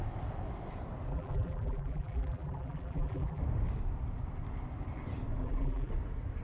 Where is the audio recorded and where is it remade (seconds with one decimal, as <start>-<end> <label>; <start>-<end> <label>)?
0.0-1.1 recorded; 1.1-3.4 remade; 3.4-5.4 recorded; 5.4-5.9 remade; 5.9-6.4 recorded

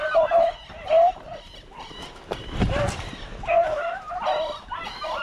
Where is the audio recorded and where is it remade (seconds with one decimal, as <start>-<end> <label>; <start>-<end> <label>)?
0.0-5.2 recorded